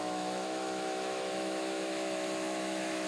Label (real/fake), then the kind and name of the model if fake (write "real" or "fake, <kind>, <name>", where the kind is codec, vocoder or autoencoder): fake, autoencoder, DAC-VAE